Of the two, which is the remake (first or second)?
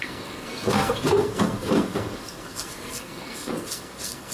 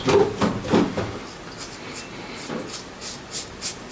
first